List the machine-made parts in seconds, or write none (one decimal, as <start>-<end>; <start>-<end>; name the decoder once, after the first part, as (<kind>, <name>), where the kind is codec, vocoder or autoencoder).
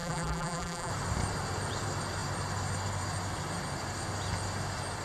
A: 0.0-0.9 (vocoder, BigVGAN v2)